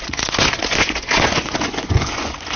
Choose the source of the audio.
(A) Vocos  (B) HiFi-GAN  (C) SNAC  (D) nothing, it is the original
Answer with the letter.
A